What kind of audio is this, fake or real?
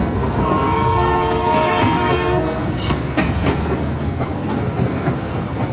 fake